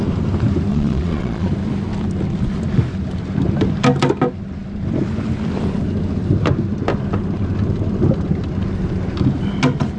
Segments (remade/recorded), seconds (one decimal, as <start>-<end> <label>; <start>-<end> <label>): 0.0-0.7 recorded; 0.7-1.5 remade; 1.5-10.0 recorded